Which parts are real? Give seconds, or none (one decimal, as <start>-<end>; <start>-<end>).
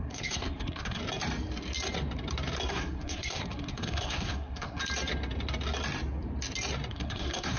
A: 1.0-2.7; 4.8-6.9